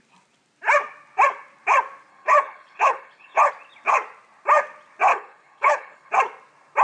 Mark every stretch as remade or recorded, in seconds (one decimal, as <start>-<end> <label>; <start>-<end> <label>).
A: 0.0-2.1 recorded; 2.1-3.5 remade; 3.5-5.1 recorded; 5.1-6.1 remade; 6.1-6.8 recorded